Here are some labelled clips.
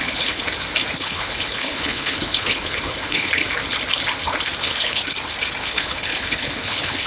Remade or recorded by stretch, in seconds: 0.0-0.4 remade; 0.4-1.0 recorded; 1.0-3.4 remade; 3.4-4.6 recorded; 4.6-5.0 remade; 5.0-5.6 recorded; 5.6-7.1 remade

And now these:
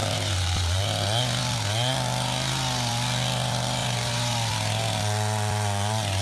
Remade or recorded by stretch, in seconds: 0.0-0.8 remade; 0.8-3.8 recorded; 3.8-4.3 remade; 4.3-6.2 recorded

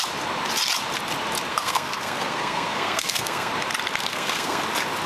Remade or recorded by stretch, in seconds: 0.0-1.5 recorded; 1.5-3.5 remade; 3.5-4.1 recorded; 4.1-4.6 remade; 4.6-5.1 recorded

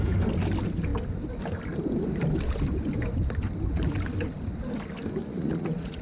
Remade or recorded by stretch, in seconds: 0.0-5.2 recorded; 5.2-6.0 remade